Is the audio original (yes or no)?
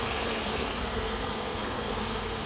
no